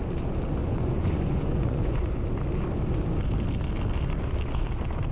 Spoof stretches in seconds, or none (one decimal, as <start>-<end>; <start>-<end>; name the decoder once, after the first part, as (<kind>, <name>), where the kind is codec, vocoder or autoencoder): 0.6-2.1 (vocoder, Vocos)